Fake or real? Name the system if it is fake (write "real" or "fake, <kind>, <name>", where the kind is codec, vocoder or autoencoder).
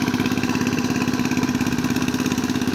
real